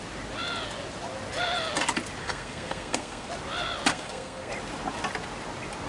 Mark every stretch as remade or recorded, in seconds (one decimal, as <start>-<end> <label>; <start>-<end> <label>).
0.0-2.2 recorded; 2.2-3.3 remade; 3.3-3.9 recorded; 3.9-4.5 remade; 4.5-5.9 recorded